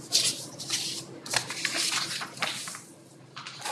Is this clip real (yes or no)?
yes